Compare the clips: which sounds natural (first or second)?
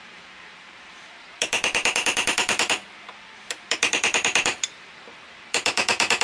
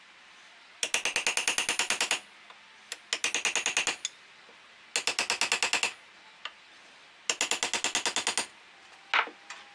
second